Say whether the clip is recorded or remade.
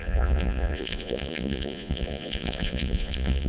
remade